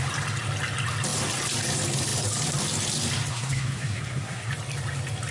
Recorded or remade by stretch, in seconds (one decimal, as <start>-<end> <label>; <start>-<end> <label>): 0.0-3.3 recorded; 3.3-4.5 remade; 4.5-5.3 recorded